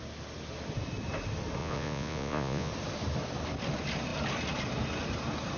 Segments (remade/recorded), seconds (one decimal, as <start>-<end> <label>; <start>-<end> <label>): 0.0-1.6 recorded; 1.6-2.7 remade; 2.7-5.6 recorded